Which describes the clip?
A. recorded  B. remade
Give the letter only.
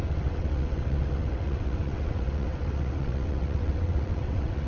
B